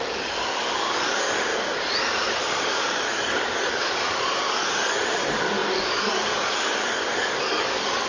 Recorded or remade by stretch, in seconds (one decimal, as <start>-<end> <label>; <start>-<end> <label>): 0.0-1.5 remade; 1.5-2.4 recorded; 2.4-8.1 remade

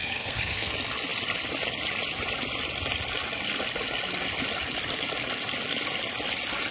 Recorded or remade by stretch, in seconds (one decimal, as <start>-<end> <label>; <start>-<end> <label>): 0.0-0.7 remade; 0.7-6.7 recorded

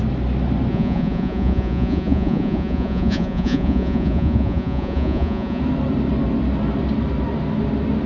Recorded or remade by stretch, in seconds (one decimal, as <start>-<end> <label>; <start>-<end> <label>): 0.0-0.7 recorded; 0.7-5.6 remade; 5.6-8.1 recorded

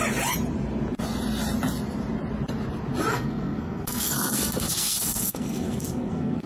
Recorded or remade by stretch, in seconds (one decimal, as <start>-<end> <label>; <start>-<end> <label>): 0.0-3.1 recorded; 3.1-6.5 remade

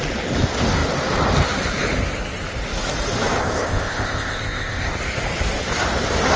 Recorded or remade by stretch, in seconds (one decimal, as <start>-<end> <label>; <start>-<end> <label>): 0.0-3.4 recorded; 3.4-4.9 remade; 4.9-6.4 recorded

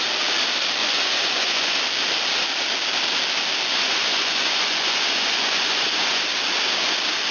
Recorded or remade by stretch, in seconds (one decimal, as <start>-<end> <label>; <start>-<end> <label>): 0.0-0.8 recorded; 0.8-1.8 remade; 1.8-3.7 recorded; 3.7-6.2 remade; 6.2-7.3 recorded

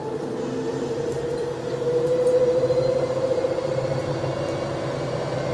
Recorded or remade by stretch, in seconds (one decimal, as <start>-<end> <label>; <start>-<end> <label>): 0.0-0.7 recorded; 0.7-4.0 remade; 4.0-5.5 recorded